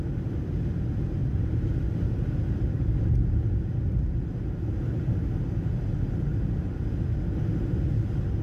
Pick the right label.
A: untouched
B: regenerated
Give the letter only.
A